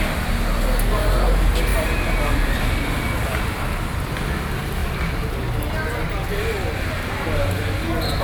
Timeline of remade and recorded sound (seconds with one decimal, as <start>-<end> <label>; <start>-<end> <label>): 0.0-1.7 recorded; 1.7-3.3 remade; 3.3-8.2 recorded